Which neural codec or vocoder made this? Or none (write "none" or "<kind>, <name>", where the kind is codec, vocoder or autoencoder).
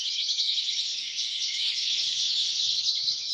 codec, HILCodec